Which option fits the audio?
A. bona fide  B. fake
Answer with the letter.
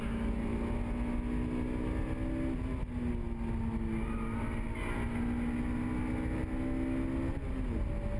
A